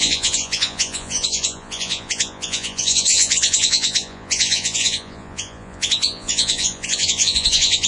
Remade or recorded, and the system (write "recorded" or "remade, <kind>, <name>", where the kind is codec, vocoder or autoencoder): remade, vocoder, Vocos